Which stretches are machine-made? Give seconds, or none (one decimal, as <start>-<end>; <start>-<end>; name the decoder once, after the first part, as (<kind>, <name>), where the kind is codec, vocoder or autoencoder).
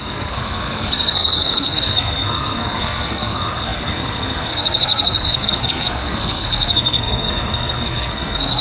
0.0-8.6 (codec, SNAC)